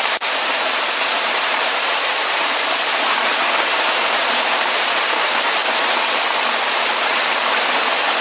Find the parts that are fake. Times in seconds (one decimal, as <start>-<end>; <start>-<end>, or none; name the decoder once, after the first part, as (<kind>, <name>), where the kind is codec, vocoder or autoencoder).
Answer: 0.0-5.6 (vocoder, BigVGAN v2); 6.7-8.2